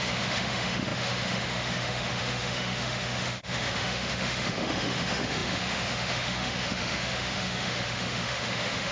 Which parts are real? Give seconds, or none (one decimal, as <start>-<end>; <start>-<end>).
none